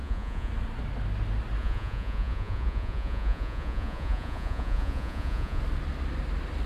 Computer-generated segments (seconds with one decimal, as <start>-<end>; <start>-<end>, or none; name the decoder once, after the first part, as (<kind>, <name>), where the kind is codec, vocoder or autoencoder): 0.0-0.5 (vocoder, Vocos); 1.6-5.6